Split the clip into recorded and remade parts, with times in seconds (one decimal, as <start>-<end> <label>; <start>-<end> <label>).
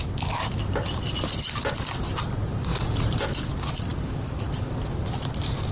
0.0-2.7 recorded; 2.7-3.2 remade; 3.2-5.7 recorded